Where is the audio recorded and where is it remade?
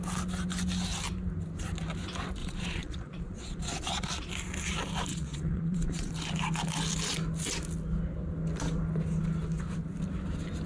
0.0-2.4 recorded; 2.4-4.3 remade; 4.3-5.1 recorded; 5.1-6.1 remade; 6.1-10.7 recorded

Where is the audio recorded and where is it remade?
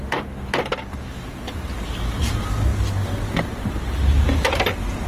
0.0-5.1 recorded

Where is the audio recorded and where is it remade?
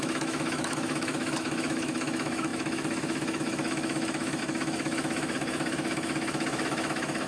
0.0-7.3 remade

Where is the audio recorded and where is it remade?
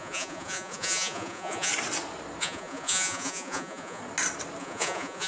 0.0-1.7 remade; 1.7-2.4 recorded; 2.4-4.0 remade; 4.0-4.6 recorded; 4.6-5.3 remade